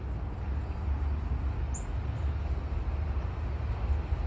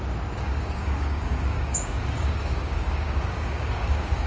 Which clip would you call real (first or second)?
first